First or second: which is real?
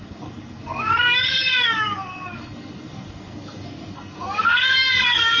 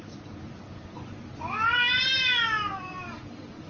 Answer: second